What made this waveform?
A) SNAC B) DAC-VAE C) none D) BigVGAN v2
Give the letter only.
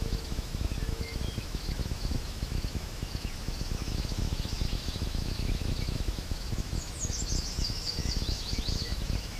B